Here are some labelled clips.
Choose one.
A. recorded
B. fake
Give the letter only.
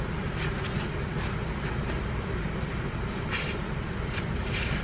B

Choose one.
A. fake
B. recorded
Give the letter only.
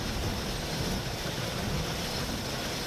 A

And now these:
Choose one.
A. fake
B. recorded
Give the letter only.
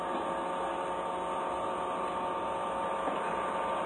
B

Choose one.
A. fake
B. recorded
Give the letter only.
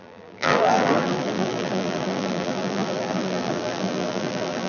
A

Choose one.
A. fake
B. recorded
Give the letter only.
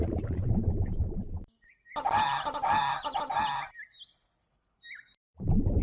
B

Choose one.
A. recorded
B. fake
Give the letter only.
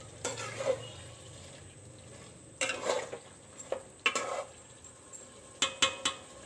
A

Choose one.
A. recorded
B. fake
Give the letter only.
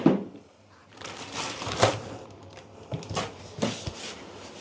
B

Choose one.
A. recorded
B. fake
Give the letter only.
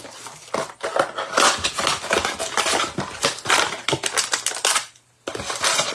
A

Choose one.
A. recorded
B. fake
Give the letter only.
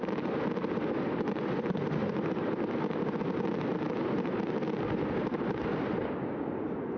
A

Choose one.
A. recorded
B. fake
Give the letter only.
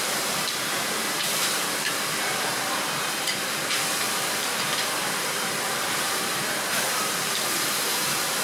B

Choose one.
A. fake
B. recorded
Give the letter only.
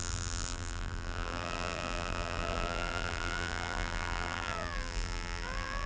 A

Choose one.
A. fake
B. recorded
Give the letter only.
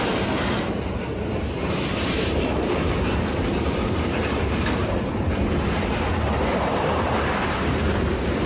A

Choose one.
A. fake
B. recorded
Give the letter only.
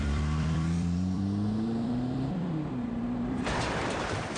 A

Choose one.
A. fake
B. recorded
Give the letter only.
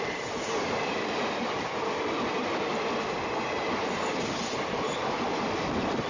A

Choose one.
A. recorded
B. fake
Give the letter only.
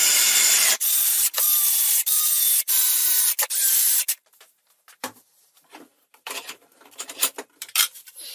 B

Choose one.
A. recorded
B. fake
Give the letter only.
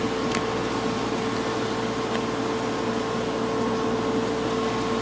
A